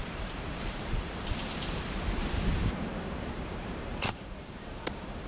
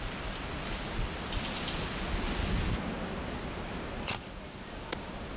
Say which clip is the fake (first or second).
first